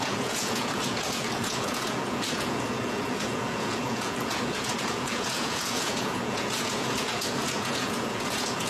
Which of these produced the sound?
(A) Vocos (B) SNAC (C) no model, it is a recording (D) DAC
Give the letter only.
A